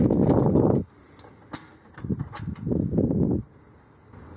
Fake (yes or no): no